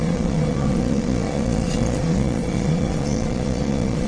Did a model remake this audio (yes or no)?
yes